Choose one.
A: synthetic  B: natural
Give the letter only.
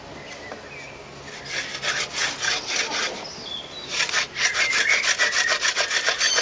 B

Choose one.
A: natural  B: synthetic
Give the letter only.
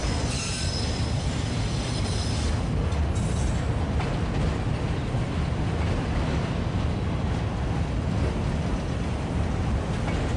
A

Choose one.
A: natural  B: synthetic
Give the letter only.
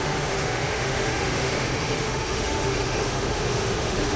B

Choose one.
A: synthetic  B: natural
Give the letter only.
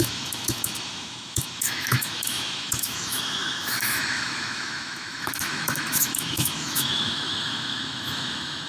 A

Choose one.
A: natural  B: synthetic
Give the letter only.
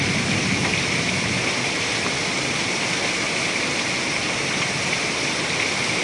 A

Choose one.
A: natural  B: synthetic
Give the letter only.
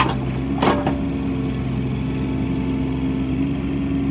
A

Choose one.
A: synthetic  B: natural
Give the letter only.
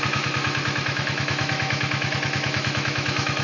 A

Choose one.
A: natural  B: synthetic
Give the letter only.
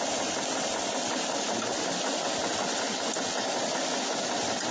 A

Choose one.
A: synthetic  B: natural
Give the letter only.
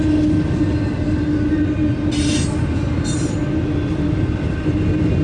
B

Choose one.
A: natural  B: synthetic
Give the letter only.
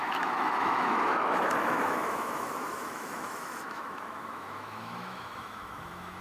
B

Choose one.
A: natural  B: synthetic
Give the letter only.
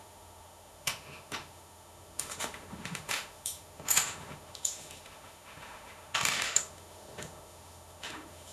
B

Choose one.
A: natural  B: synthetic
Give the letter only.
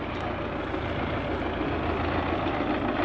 A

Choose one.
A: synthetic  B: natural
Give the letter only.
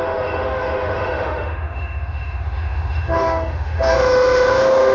A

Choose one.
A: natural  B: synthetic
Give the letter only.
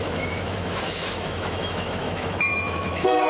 B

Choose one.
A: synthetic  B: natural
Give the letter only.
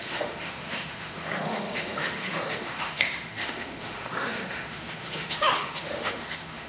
A